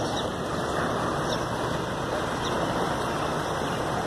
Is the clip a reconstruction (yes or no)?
no